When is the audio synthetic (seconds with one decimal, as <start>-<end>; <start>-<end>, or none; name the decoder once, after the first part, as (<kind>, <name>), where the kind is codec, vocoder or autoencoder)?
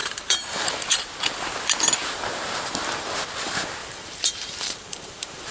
0.0-1.0 (vocoder, BigVGAN v2); 3.8-5.5